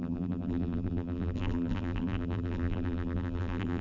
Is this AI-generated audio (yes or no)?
yes